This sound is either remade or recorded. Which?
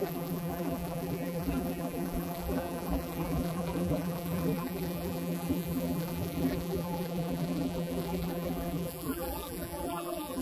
remade